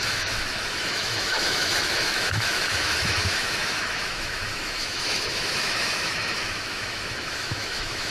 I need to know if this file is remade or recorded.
remade